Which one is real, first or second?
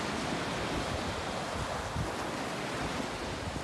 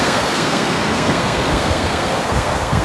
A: first